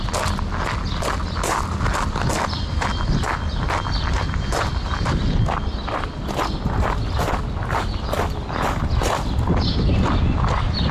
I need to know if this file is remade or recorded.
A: recorded